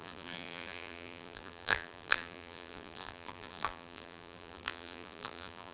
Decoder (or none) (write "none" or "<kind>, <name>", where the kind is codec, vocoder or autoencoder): vocoder, BigVGAN v2